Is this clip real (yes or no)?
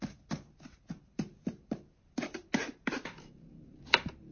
no